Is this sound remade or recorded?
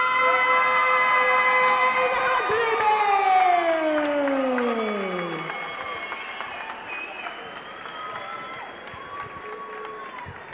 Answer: recorded